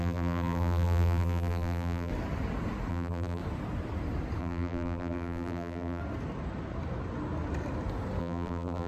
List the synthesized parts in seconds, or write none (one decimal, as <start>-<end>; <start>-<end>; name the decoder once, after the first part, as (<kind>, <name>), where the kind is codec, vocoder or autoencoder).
0.0-2.1 (vocoder, BigVGAN v2); 2.9-3.4; 4.4-6.0; 8.2-8.9